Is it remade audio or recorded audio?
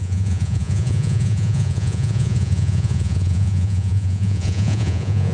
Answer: remade